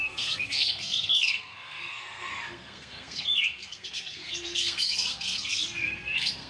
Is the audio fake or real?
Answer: fake